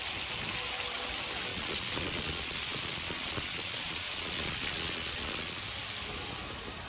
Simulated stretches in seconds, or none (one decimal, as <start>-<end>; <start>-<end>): 1.5-5.6